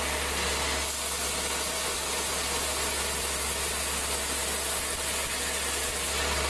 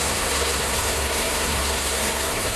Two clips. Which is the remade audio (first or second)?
second